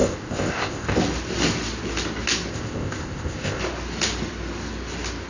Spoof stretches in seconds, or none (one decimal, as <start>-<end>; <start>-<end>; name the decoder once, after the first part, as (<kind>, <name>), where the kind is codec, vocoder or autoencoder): 0.0-1.0 (codec, ZipCodec); 2.5-3.6